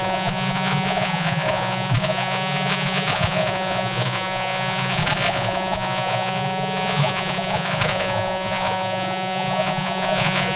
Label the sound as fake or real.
fake